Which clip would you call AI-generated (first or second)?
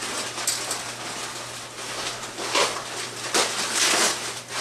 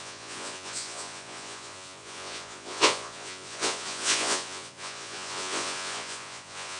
second